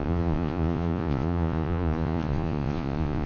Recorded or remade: remade